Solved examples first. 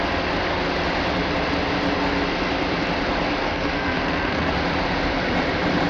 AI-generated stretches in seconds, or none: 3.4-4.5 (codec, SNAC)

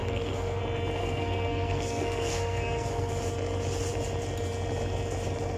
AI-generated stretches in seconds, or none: 0.0-0.6 (codec, SNAC); 1.0-3.1

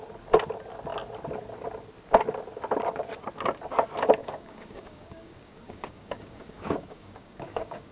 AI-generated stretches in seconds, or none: 4.2-7.9 (codec, DAC)

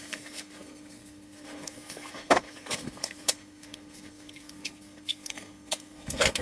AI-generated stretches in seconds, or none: 0.0-6.4 (codec, SNAC)